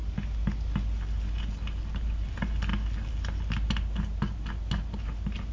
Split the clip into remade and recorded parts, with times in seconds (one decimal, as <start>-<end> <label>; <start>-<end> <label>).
0.0-5.5 recorded